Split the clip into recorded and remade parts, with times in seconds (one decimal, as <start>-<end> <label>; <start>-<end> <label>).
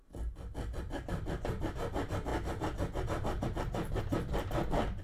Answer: 0.0-5.0 recorded